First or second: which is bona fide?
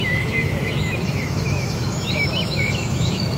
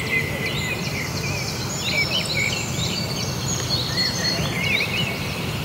second